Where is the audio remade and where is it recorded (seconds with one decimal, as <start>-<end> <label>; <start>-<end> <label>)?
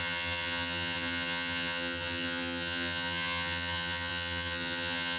0.0-5.2 remade